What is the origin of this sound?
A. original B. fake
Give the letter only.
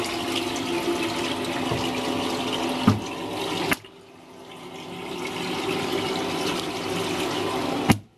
A